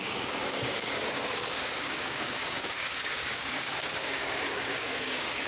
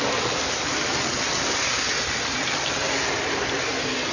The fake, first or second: first